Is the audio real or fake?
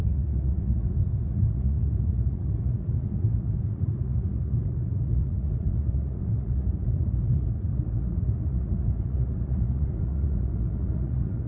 fake